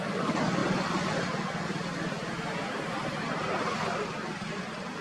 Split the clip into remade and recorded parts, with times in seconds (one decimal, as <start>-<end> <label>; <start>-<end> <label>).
0.0-5.0 recorded